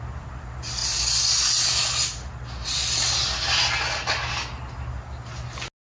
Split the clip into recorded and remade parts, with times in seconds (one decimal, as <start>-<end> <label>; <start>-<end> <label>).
0.0-6.0 recorded